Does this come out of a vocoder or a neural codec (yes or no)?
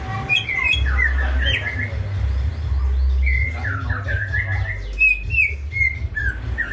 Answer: no